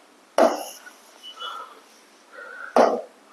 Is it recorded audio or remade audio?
recorded